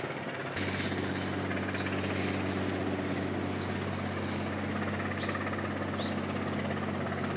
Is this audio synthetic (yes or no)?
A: no